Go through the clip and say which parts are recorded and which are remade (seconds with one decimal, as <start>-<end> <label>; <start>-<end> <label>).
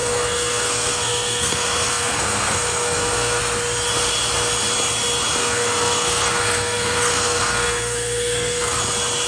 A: 0.0-3.4 remade; 3.4-5.4 recorded; 5.4-8.8 remade; 8.8-9.3 recorded